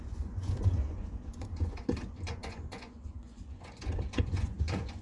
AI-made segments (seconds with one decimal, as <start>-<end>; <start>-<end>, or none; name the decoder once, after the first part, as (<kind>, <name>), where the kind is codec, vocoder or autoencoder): 0.0-5.0 (vocoder, Vocos)